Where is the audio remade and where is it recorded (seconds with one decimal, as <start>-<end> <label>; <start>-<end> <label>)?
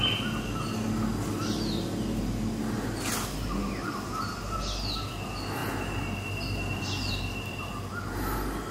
0.0-8.7 recorded